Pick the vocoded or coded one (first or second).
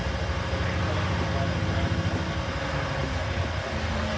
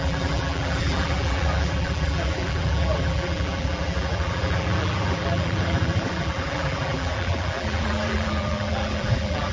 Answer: second